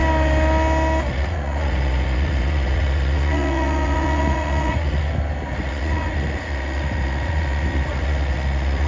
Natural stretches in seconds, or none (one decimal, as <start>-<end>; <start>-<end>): 0.0-1.1; 5.0-5.6